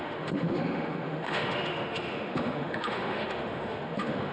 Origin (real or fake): fake